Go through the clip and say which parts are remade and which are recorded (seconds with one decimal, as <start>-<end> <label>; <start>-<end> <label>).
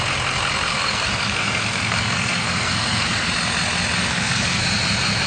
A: 0.0-0.7 recorded; 0.7-3.3 remade; 3.3-4.0 recorded; 4.0-4.6 remade; 4.6-5.3 recorded